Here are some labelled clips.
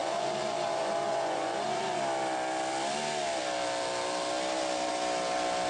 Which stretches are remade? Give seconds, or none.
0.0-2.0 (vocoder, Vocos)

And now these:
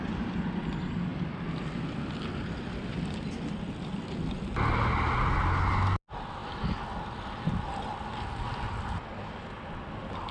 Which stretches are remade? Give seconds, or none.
none

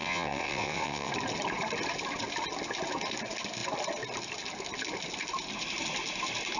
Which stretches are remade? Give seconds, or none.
0.0-1.1 (vocoder, WaveNeXt)

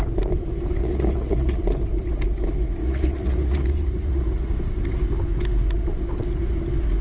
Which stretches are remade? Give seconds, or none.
0.8-1.6 (vocoder, Vocos); 2.8-4.5